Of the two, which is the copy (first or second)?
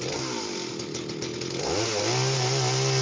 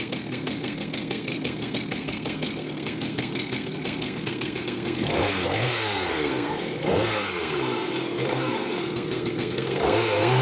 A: second